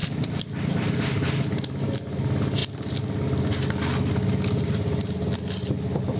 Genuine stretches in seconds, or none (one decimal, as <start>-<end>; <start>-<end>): 0.0-6.2